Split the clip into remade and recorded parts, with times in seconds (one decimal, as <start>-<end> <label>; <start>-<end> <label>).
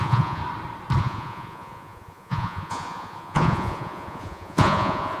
0.0-0.4 remade; 0.4-1.0 recorded; 1.0-5.2 remade